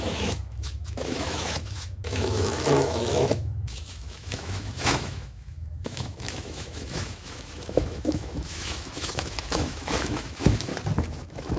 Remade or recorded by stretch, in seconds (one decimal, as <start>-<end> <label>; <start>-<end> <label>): 0.0-10.7 remade; 10.7-11.2 recorded; 11.2-11.6 remade